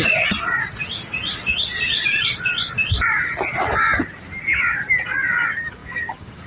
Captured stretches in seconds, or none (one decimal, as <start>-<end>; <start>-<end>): 0.0-5.8